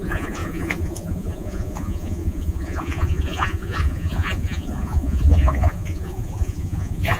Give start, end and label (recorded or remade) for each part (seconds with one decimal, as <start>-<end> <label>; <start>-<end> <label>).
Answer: 0.0-7.2 remade